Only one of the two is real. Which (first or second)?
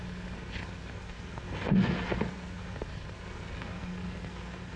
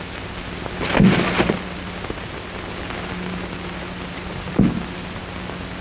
second